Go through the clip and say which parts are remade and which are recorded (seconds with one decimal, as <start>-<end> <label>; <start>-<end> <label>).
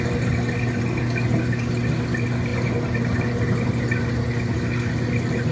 0.0-5.5 recorded